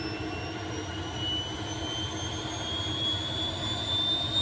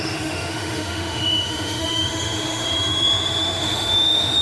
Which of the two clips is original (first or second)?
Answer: first